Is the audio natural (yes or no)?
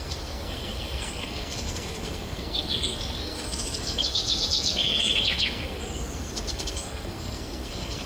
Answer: no